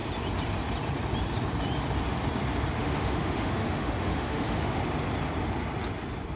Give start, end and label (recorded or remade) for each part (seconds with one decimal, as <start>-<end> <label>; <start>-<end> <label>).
0.0-2.8 recorded; 2.8-4.8 remade; 4.8-6.4 recorded